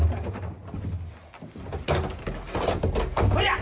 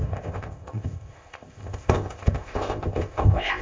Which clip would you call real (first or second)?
first